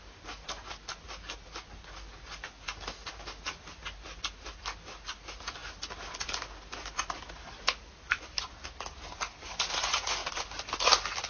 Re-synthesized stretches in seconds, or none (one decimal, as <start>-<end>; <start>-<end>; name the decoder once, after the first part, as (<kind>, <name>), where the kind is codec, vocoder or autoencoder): none